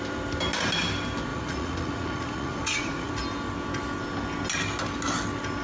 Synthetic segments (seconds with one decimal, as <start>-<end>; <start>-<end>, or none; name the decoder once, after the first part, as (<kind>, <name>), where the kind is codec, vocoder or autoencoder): 1.3-3.1 (vocoder, Vocos)